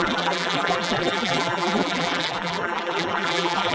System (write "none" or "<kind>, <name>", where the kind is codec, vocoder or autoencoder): vocoder, BigVGAN v2